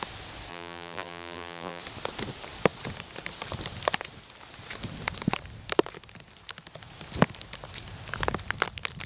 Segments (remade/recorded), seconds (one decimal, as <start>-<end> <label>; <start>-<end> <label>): 0.0-0.5 recorded; 0.5-1.8 remade; 1.8-9.1 recorded